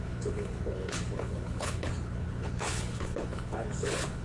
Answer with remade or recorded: remade